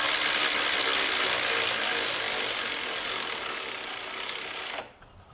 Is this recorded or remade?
recorded